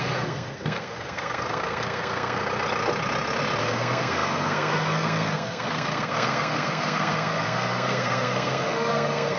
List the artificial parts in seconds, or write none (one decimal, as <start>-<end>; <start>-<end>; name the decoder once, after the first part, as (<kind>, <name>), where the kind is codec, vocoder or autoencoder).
0.0-2.4 (codec, SNAC); 3.6-9.4